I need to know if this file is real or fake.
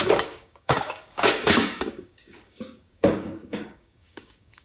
fake